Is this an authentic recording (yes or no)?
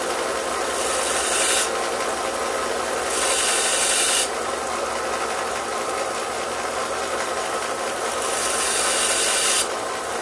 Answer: yes